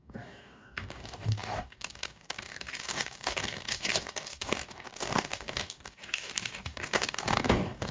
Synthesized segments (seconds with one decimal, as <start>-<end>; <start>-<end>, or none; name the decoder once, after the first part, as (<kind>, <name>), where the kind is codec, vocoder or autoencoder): 0.0-7.9 (codec, DAC)